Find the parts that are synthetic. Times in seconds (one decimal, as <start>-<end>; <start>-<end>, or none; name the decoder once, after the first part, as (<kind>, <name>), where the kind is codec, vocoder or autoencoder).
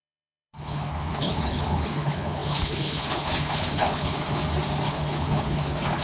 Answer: 0.0-4.4 (codec, HILCodec); 4.9-6.0